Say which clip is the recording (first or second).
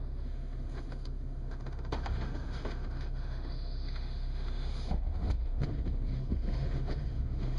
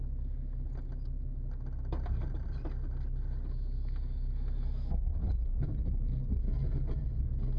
second